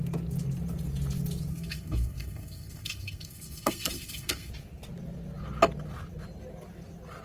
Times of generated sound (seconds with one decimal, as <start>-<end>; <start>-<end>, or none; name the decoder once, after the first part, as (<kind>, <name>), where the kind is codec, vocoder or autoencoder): 1.5-4.5 (codec, SNAC)